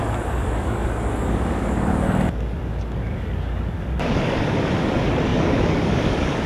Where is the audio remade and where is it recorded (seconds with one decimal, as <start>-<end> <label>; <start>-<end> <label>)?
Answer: 0.0-6.5 remade